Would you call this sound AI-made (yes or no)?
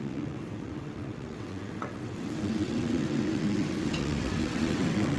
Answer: yes